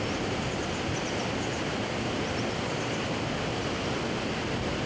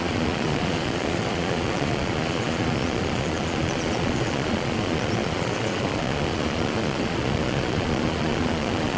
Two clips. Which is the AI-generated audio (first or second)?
second